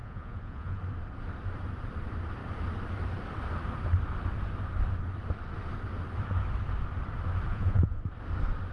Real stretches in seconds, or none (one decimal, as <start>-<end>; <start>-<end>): 0.8-7.5; 8.0-8.7

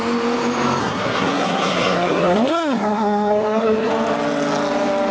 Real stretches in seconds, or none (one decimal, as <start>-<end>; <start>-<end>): 0.0-0.8; 3.9-5.1